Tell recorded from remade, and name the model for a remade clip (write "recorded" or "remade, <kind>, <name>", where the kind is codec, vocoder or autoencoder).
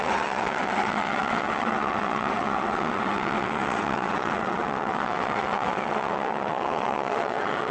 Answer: remade, vocoder, WaveNeXt